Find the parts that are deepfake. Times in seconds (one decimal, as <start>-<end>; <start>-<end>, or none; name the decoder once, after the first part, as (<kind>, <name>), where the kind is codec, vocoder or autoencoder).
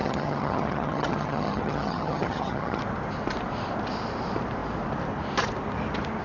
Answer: 0.0-2.8 (vocoder, HiFi-GAN)